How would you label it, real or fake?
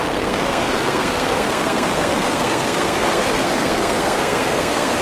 fake